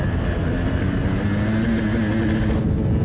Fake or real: real